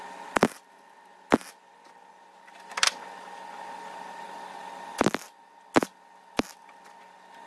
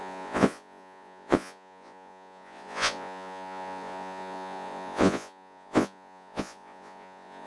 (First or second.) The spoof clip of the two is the second